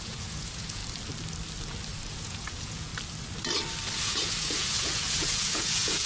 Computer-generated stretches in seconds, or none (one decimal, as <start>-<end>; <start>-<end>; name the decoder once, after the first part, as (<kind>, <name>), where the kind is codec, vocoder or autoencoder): 0.0-0.8 (vocoder, Vocos); 2.1-2.9; 4.0-6.1